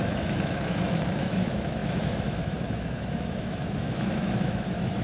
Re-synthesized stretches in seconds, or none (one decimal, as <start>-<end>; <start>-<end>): 0.0-5.0